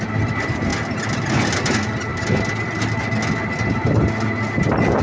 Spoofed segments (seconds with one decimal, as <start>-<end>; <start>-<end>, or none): none